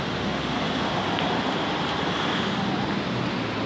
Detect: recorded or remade recorded